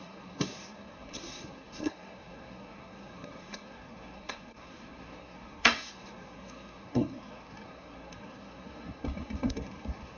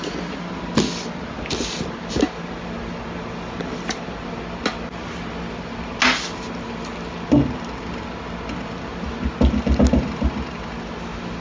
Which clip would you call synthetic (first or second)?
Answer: first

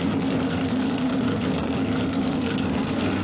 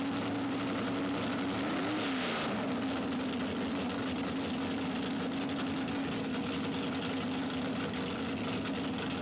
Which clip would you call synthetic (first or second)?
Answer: first